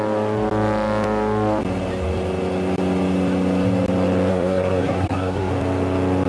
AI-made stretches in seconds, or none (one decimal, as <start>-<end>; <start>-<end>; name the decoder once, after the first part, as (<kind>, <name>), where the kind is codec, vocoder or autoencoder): 4.3-5.5 (codec, SNAC)

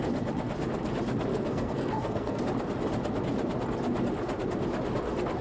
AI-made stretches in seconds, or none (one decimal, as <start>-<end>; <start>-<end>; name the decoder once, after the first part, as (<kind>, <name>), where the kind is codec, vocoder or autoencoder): 1.3-2.4 (codec, SNAC)

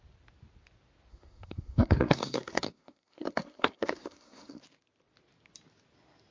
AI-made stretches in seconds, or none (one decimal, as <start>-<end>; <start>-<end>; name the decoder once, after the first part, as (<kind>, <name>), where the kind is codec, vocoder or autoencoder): 1.1-4.6 (codec, SNAC)

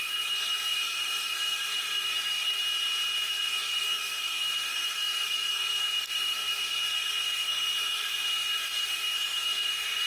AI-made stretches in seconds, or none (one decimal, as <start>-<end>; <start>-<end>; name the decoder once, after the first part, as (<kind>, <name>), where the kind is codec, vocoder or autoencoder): 0.0-2.6 (codec, SNAC); 3.2-10.1

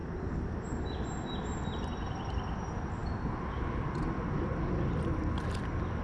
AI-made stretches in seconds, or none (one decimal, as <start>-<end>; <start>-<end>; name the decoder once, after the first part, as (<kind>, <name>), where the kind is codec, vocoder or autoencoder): none

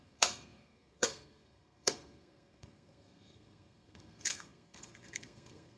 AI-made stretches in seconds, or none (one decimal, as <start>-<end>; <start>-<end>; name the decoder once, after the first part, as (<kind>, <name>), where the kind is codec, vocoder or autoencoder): 0.0-5.8 (codec, SNAC)

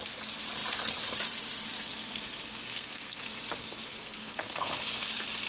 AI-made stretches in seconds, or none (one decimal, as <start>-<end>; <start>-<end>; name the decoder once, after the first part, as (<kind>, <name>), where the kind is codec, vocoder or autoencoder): 2.7-3.2 (codec, SNAC); 3.9-4.7

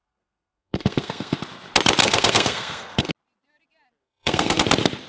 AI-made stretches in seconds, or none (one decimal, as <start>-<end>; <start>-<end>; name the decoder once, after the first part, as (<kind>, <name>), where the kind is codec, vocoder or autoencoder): 0.0-1.4 (codec, SNAC); 2.0-3.1; 4.0-4.6